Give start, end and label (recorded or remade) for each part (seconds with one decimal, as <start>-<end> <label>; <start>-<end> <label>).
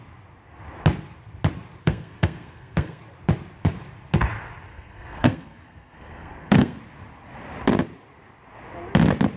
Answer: 0.0-1.8 recorded; 1.8-3.0 remade; 3.0-4.7 recorded; 4.7-6.8 remade; 6.8-9.4 recorded